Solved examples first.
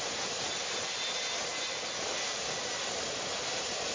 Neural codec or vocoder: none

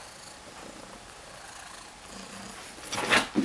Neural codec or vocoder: none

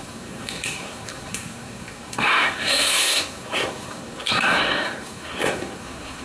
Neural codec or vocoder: codec, SNAC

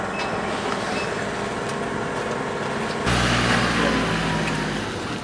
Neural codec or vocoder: none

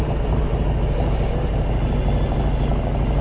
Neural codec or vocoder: none